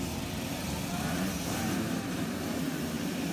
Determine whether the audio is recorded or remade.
remade